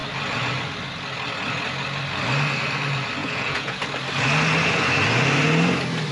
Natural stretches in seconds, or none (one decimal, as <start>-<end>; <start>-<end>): 0.0-3.2; 3.8-6.1